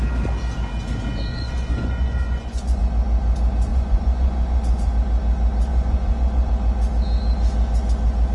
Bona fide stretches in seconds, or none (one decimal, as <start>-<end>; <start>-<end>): 0.0-1.3; 2.8-3.7; 4.9-5.7; 6.5-8.3